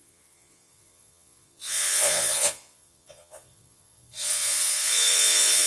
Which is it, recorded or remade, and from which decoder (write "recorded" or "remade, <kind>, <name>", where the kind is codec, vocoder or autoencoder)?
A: remade, vocoder, Vocos